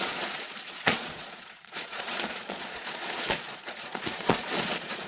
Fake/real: fake